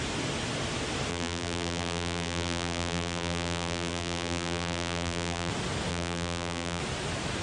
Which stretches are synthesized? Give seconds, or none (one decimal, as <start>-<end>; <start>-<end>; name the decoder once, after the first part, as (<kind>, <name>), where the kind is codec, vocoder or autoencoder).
1.1-5.5 (vocoder, BigVGAN v2); 5.9-6.8